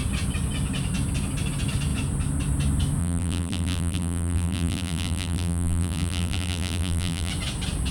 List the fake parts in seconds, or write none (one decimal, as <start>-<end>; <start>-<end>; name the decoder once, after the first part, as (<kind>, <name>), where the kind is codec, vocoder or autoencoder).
3.0-7.3 (vocoder, BigVGAN v2)

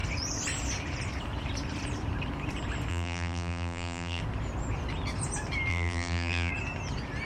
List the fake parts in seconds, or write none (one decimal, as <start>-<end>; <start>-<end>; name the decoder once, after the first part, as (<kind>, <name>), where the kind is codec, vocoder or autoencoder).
2.9-4.2 (vocoder, BigVGAN v2); 5.7-6.5

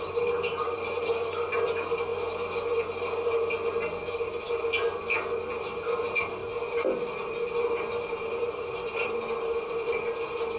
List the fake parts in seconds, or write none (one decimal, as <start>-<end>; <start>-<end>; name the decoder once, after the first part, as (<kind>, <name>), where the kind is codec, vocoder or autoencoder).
0.0-2.1 (vocoder, BigVGAN v2); 5.6-6.4; 8.0-10.6

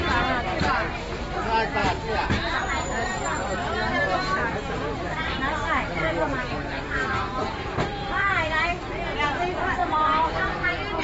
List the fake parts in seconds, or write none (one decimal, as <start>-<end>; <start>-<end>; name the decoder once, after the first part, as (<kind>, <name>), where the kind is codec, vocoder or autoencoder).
1.8-4.0 (vocoder, BigVGAN v2); 7.4-8.3; 9.8-11.0

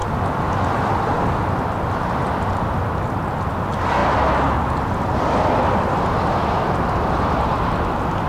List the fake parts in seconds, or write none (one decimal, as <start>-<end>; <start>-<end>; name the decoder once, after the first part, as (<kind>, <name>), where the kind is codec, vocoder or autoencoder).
none

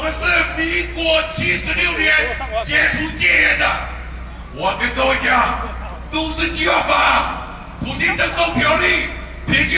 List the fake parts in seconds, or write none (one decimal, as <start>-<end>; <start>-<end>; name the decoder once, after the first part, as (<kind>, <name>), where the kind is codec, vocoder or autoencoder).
none